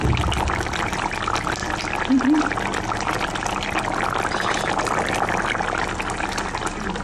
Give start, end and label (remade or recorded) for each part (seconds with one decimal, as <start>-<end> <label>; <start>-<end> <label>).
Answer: 0.0-7.0 recorded